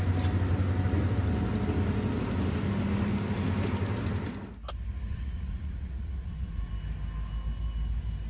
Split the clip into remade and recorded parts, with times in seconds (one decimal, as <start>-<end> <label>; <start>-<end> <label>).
0.0-5.1 recorded; 5.1-6.7 remade; 6.7-8.3 recorded